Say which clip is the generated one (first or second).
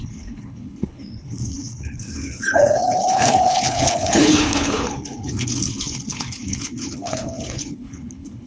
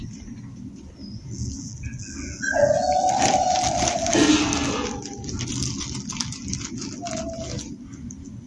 first